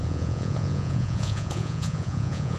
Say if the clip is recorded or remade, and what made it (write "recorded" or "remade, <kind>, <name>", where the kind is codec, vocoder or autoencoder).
remade, vocoder, Vocos